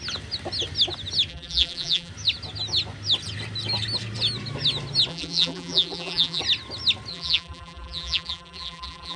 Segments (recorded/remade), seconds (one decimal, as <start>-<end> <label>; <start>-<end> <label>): 0.0-1.3 recorded; 1.3-2.1 remade; 2.1-5.1 recorded; 5.1-6.4 remade; 6.4-7.1 recorded; 7.1-9.2 remade